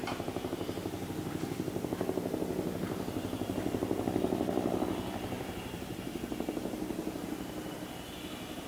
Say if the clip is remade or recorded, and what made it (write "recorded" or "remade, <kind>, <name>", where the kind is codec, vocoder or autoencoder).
remade, vocoder, BigVGAN v2